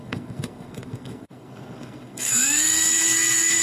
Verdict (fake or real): fake